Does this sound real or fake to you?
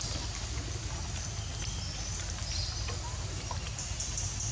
real